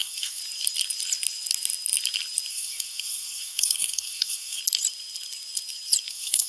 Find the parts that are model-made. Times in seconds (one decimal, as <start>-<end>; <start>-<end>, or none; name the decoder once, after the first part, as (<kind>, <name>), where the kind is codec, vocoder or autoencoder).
0.0-0.4 (codec, SNAC); 2.5-4.6; 6.1-6.5